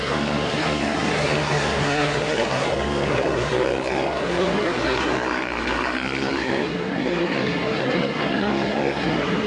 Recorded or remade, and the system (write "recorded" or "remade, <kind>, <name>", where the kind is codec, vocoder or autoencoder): remade, codec, SNAC